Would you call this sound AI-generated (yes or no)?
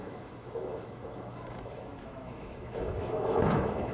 yes